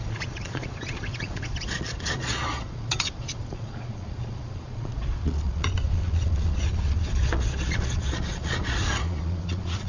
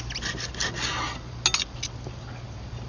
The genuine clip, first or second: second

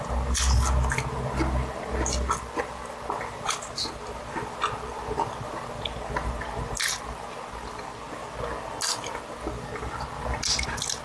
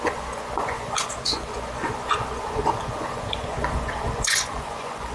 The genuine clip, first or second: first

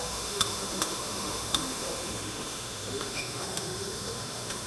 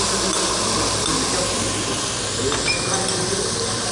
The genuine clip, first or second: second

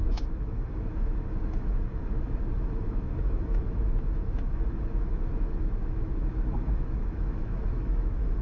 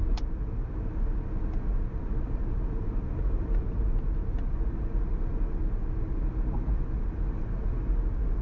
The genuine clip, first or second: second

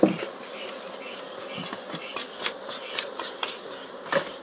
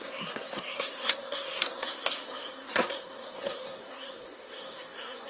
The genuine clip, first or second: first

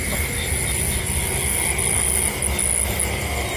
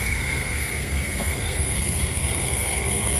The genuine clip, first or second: first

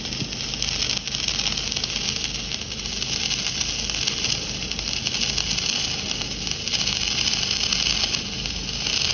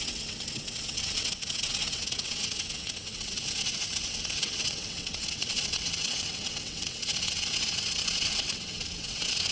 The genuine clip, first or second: first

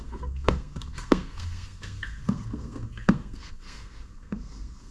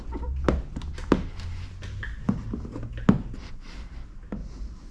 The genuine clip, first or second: second